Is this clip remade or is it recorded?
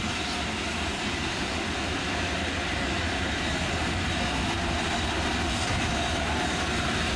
recorded